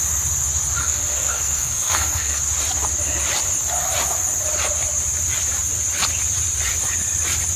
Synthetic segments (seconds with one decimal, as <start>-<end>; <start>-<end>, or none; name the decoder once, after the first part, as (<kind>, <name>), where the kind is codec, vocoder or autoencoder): 0.8-2.4 (codec, SNAC)